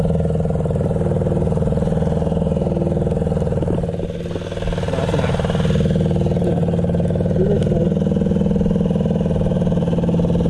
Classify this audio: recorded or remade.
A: recorded